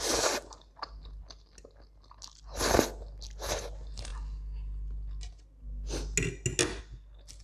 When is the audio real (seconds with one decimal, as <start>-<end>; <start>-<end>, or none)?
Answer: 0.0-7.4